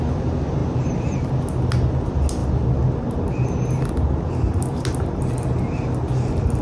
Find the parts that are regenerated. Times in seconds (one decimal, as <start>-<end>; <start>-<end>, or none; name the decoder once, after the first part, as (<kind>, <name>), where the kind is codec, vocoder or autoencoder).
0.6-1.3 (vocoder, BigVGAN v2)